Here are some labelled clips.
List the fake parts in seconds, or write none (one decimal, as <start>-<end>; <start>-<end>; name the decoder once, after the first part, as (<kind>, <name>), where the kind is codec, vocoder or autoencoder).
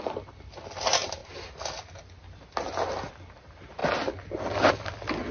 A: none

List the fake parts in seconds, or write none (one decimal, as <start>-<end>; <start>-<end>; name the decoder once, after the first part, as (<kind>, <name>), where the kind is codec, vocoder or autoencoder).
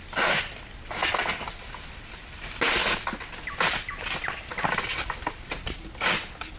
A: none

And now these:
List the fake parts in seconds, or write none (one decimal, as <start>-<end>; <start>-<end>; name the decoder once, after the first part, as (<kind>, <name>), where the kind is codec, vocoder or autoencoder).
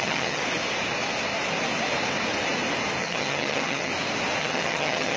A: 0.0-0.4 (vocoder, HiFi-GAN); 3.0-3.9; 4.4-5.2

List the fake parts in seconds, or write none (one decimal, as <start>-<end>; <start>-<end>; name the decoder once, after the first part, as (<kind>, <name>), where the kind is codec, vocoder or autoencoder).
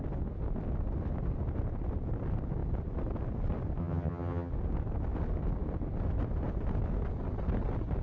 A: 3.8-4.5 (vocoder, HiFi-GAN)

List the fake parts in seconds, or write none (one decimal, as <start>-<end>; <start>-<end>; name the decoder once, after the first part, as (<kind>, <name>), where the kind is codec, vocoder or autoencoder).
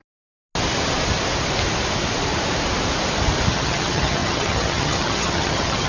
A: 3.5-5.9 (vocoder, HiFi-GAN)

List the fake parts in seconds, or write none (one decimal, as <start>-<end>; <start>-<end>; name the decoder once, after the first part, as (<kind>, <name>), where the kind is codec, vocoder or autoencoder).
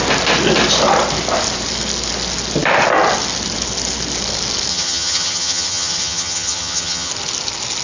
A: 4.7-7.1 (vocoder, HiFi-GAN)